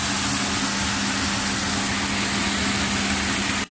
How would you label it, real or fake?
real